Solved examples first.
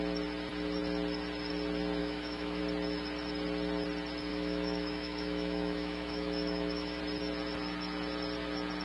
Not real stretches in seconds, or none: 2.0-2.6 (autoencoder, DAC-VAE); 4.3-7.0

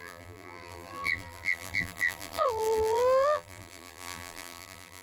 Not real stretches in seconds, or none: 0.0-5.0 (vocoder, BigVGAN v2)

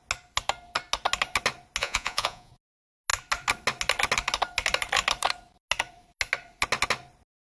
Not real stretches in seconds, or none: 1.8-2.5 (vocoder, Vocos)

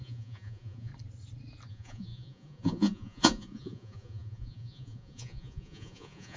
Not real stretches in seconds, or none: 0.0-0.9 (vocoder, Vocos); 1.7-6.4

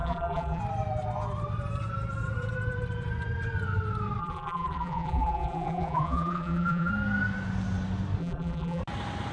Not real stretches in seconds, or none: 0.0-0.6 (vocoder, BigVGAN v2); 4.2-6.9; 8.2-8.8